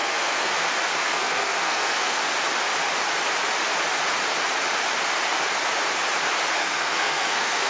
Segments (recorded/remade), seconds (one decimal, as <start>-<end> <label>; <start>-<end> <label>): 0.0-0.5 remade; 0.5-1.0 recorded; 1.0-2.2 remade; 2.2-6.6 recorded; 6.6-7.7 remade